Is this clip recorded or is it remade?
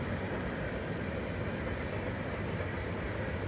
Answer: recorded